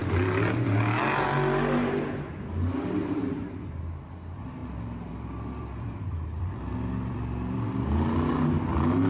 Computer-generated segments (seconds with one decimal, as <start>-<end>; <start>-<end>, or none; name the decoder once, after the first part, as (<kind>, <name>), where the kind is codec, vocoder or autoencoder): 3.0-3.7 (vocoder, BigVGAN v2); 4.6-7.9